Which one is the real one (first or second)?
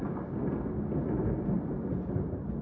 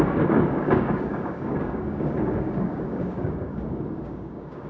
first